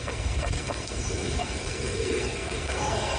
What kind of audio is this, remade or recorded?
remade